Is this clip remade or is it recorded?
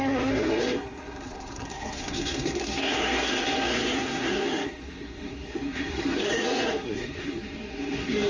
remade